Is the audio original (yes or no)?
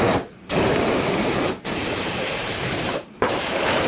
no